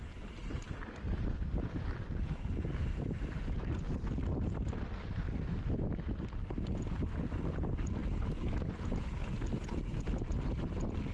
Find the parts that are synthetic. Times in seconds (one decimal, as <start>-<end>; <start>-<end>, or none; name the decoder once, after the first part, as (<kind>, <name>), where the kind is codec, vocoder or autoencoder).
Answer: none